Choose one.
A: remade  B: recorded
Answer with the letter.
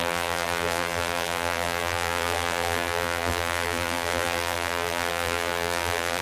A